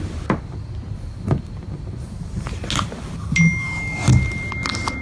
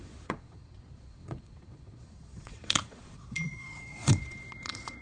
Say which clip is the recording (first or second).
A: first